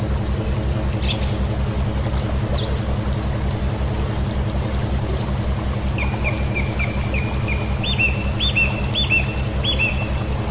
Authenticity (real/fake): real